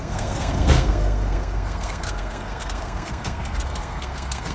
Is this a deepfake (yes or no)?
yes